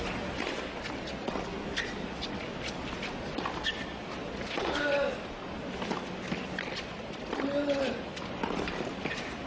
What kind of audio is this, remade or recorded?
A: recorded